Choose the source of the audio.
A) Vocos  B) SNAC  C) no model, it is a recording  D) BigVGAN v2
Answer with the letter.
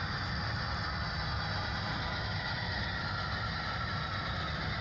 C